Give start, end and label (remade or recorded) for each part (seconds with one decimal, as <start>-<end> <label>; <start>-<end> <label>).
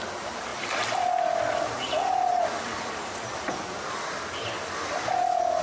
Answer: 0.0-5.6 recorded